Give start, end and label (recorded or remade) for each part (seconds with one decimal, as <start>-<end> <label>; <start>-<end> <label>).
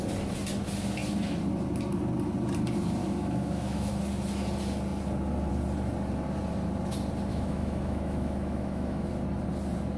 0.0-3.0 recorded; 3.0-3.9 remade; 3.9-7.3 recorded; 7.3-9.1 remade; 9.1-10.0 recorded